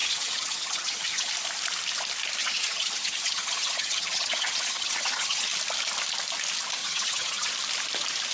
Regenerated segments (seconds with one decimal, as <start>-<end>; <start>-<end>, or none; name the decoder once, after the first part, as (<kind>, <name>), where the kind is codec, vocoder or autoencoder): 0.0-1.3 (vocoder, HiFi-GAN); 2.4-5.5; 6.8-7.5